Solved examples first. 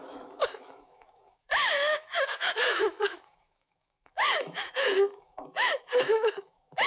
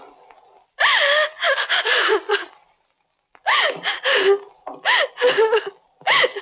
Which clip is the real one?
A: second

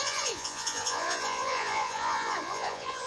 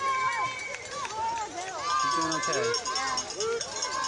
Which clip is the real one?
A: second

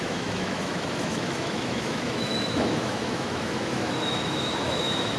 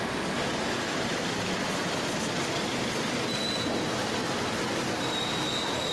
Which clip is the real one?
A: second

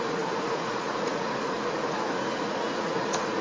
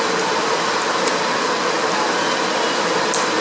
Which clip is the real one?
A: second